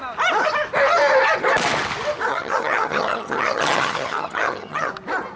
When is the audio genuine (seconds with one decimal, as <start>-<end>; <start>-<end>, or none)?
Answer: 0.0-2.3; 4.9-5.4